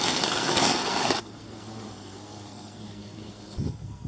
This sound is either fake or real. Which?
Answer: fake